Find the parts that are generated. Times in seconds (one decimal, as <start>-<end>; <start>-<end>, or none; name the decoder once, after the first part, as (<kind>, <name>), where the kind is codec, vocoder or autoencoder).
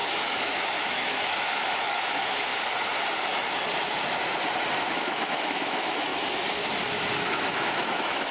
0.0-2.5 (autoencoder, DAC-VAE); 4.8-6.1; 7.3-8.3